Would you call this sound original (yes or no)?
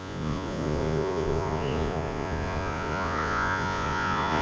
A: no